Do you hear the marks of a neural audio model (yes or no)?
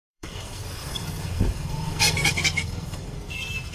yes